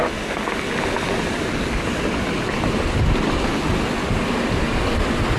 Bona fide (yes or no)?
yes